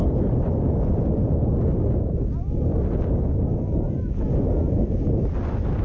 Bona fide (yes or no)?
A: yes